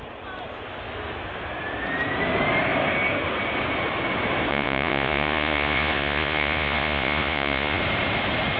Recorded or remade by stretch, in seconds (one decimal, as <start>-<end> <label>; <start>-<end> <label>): 0.0-4.5 recorded; 4.5-7.8 remade; 7.8-8.6 recorded